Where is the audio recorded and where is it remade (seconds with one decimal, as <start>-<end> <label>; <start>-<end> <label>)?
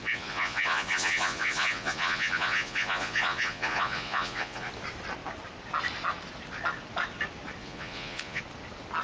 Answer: 0.0-4.7 remade; 4.7-7.6 recorded; 7.6-8.4 remade; 8.4-9.0 recorded